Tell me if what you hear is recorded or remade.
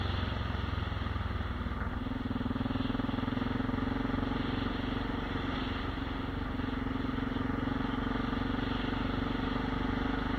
recorded